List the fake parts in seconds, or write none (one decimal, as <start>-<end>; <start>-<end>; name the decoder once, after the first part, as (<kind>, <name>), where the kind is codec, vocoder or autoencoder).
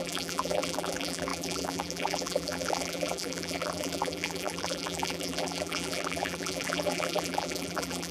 0.0-8.1 (vocoder, BigVGAN v2)